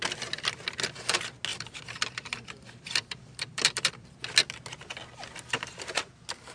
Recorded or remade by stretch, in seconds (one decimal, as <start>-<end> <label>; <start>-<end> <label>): 0.0-1.5 recorded; 1.5-4.1 remade; 4.1-6.5 recorded